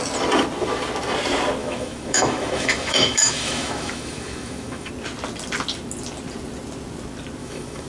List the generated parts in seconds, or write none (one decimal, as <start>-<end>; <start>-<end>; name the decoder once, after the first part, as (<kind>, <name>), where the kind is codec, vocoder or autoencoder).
1.6-4.9 (autoencoder, DAC-VAE); 7.4-7.9

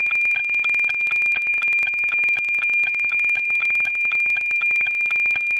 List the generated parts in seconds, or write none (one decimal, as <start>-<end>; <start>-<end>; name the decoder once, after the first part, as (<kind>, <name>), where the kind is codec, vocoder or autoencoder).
0.4-1.0 (autoencoder, DAC-VAE); 1.5-4.9